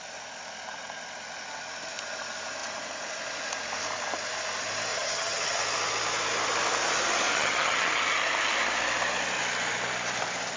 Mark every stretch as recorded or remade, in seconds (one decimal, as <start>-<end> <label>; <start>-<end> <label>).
0.0-4.9 recorded; 4.9-5.6 remade; 5.6-7.3 recorded; 7.3-8.0 remade; 8.0-10.6 recorded